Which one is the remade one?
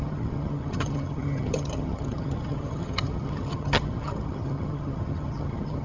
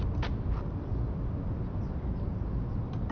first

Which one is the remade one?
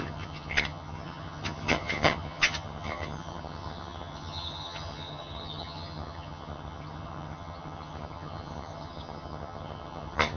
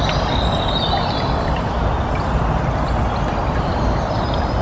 first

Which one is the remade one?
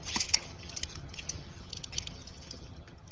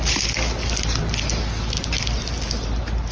first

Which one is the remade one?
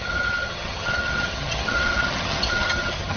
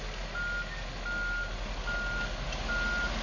first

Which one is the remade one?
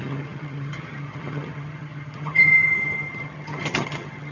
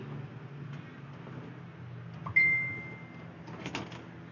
first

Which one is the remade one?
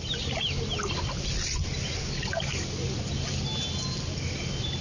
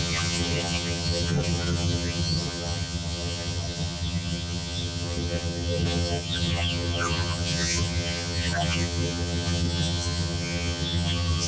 second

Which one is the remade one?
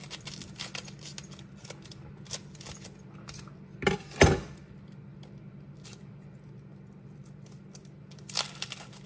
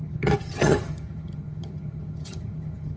second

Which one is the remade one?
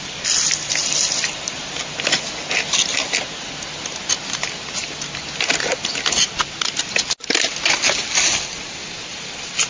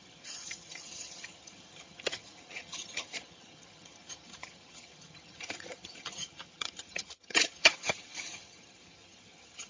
second